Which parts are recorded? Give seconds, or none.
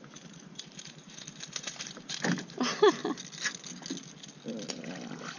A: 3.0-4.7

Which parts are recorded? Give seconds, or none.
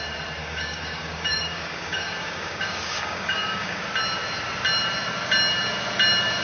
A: 0.0-0.4; 3.8-6.4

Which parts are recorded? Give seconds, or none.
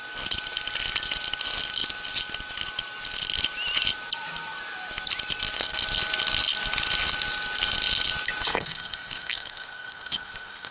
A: 0.0-8.5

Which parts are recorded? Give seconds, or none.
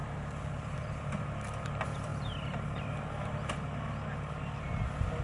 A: 0.0-5.2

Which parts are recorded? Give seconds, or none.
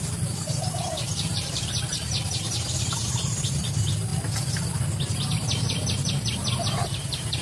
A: 4.1-5.1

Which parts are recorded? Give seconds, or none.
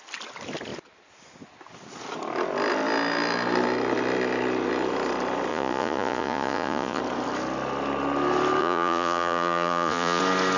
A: 0.0-5.5; 7.0-8.6; 10.2-10.6